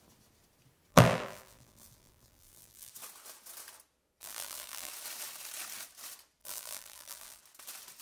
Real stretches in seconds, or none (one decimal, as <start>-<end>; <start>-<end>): 0.0-0.9; 2.9-4.2; 4.9-6.4; 7.4-8.0